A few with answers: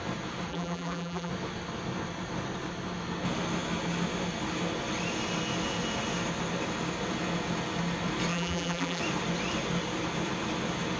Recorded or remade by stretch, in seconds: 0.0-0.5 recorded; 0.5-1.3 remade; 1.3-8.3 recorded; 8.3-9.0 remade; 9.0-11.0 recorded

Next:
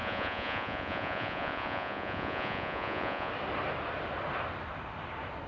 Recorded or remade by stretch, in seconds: 0.0-3.3 remade; 3.3-5.5 recorded

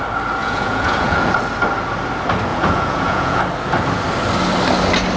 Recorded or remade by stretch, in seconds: 0.0-0.4 recorded; 0.4-1.3 remade; 1.3-2.5 recorded; 2.5-3.4 remade; 3.4-5.2 recorded

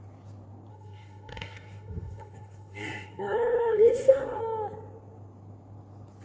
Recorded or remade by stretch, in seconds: 0.0-0.7 recorded; 0.7-4.4 remade; 4.4-6.2 recorded

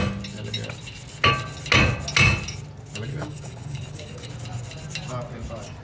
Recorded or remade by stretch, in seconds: 0.0-3.1 recorded; 3.1-4.3 remade; 4.3-5.8 recorded

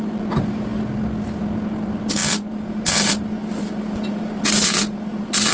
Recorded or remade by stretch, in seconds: 0.0-5.5 recorded